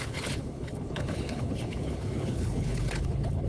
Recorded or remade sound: remade